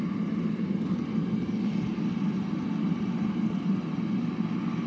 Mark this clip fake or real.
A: real